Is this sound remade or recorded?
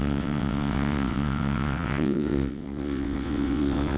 remade